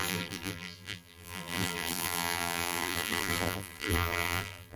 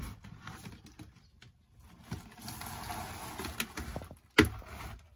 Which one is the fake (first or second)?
first